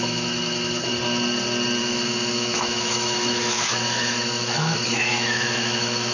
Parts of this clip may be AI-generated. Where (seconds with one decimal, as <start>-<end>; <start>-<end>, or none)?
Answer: 0.0-0.9; 1.8-6.1